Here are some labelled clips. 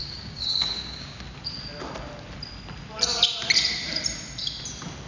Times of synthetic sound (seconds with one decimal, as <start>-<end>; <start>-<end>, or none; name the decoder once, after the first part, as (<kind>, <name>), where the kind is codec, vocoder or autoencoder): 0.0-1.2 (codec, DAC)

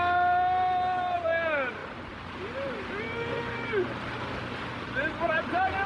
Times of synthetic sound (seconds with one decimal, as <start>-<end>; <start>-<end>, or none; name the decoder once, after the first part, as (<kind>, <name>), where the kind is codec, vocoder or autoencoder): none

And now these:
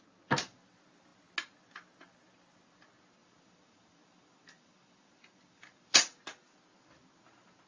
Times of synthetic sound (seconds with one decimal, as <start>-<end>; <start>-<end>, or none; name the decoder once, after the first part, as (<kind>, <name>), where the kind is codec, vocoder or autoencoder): 3.2-6.2 (vocoder, BigVGAN v2)

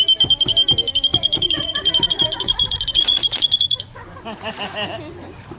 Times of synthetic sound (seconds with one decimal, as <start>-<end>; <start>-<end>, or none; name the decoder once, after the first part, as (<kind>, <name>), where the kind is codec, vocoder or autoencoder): 1.1-4.5 (vocoder, Vocos)

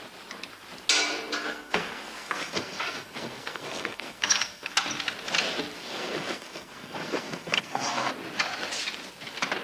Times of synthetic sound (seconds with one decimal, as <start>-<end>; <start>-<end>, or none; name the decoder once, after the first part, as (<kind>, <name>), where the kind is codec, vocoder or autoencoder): 1.4-4.7 (codec, SNAC); 5.8-8.1

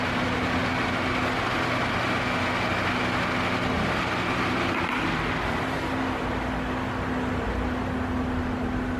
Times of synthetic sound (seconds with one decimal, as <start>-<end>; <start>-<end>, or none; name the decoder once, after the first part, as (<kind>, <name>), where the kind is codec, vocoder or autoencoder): none